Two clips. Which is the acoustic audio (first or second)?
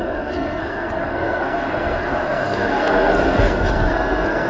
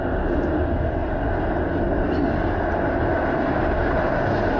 second